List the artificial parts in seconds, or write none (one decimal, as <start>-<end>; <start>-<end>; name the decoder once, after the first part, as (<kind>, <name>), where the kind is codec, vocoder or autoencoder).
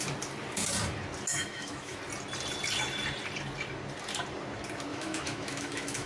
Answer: 1.3-2.0 (autoencoder, DAC-VAE); 4.9-6.1